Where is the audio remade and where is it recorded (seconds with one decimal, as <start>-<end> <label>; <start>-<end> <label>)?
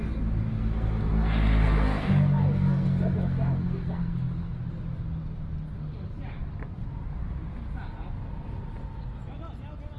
0.0-0.5 recorded; 0.5-4.6 remade; 4.6-10.0 recorded